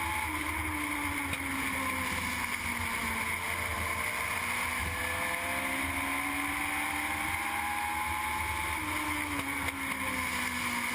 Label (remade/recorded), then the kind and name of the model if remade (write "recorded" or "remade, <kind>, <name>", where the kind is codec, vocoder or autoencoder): recorded